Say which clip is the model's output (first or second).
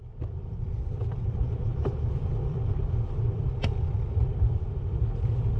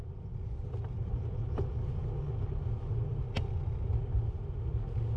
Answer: first